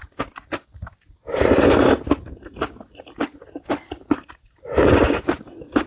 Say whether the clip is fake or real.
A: real